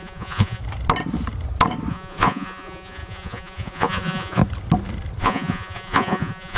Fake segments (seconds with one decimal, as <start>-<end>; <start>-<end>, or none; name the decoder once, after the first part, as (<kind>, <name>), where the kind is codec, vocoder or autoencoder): 0.0-0.6 (vocoder, Vocos); 1.9-4.4; 5.2-6.6